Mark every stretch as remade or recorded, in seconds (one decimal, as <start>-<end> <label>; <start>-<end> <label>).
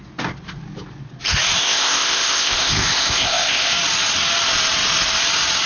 0.0-1.6 recorded; 1.6-3.7 remade; 3.7-5.7 recorded